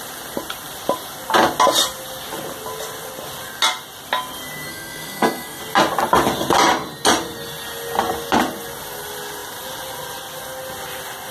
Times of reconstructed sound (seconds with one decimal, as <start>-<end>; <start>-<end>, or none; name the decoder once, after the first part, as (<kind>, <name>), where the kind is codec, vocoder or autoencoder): 4.7-5.6 (codec, SNAC)